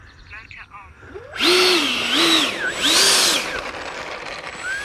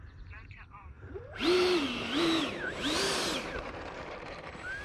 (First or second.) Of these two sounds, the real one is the first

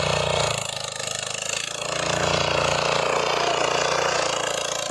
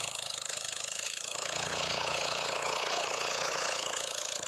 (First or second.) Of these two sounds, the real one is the first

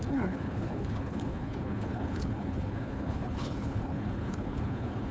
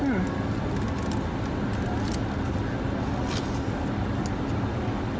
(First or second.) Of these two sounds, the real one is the second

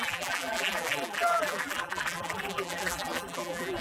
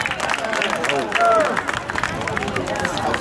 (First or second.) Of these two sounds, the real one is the second